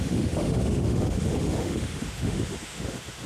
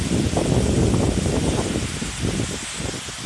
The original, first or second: second